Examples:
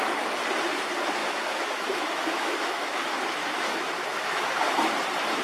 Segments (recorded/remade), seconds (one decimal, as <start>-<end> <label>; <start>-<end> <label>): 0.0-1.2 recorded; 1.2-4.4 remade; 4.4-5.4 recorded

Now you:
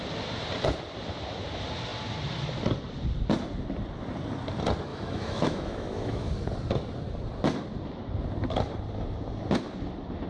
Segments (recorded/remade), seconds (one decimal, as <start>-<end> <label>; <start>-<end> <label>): 0.0-4.9 recorded; 4.9-6.3 remade; 6.3-10.3 recorded

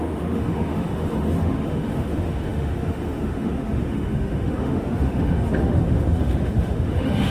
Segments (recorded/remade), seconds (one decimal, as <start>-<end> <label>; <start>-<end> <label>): 0.0-7.3 remade